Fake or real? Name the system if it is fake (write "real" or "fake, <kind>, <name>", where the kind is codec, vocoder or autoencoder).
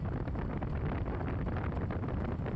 real